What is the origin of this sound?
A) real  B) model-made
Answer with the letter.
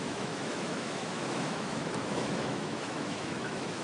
B